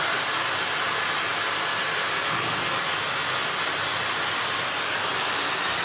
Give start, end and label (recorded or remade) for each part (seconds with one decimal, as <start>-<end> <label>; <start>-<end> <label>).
0.0-5.8 recorded